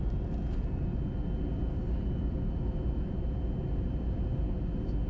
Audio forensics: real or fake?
real